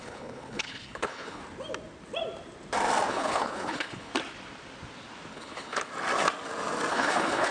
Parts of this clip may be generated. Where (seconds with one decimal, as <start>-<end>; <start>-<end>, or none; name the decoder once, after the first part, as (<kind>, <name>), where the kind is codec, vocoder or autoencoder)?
0.0-1.4 (codec, HILCodec); 3.1-4.1; 5.3-5.9; 6.9-7.5

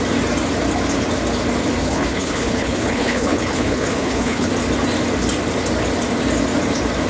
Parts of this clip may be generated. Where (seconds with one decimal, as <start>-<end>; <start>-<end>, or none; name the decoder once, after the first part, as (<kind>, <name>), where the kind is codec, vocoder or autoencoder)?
1.8-4.5 (codec, HILCodec)

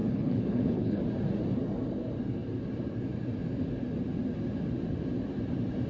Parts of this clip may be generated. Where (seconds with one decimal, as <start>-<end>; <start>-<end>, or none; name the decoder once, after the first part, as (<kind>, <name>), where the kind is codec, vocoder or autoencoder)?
0.0-1.0 (codec, HILCodec)

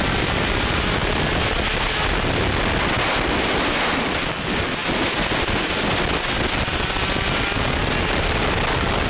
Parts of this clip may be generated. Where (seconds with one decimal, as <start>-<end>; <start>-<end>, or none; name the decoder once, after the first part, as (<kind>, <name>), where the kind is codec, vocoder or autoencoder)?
none

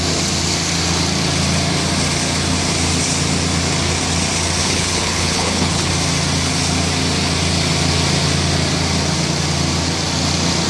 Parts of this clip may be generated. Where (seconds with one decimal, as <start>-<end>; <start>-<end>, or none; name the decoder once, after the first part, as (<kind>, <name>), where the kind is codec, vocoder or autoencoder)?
4.6-5.9 (codec, HILCodec)